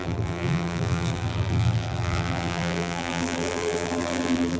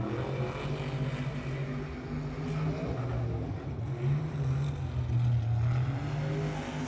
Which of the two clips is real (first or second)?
second